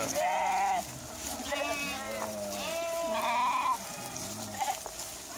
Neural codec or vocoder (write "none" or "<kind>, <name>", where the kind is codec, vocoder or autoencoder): none